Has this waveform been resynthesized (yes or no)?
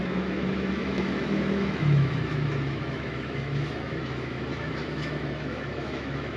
yes